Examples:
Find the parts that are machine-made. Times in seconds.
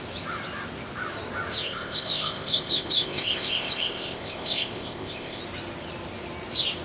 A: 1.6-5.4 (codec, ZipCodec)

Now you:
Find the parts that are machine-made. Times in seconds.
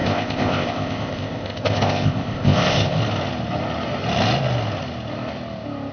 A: 0.0-3.0 (codec, ZipCodec)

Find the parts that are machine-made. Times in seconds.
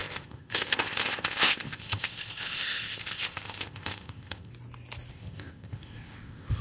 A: 0.0-4.5 (codec, ZipCodec); 5.1-6.6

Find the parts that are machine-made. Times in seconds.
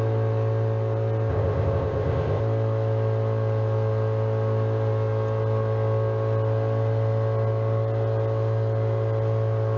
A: 1.3-2.4 (codec, ZipCodec)